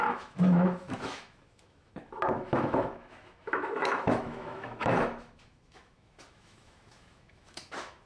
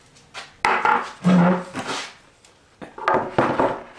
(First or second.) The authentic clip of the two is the second